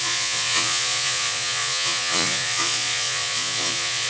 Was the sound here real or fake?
fake